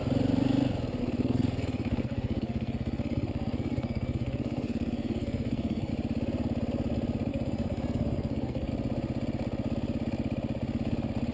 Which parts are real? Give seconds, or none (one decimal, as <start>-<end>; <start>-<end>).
0.0-1.0; 5.9-7.3; 8.7-11.3